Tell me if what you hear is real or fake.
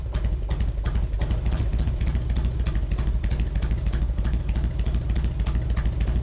real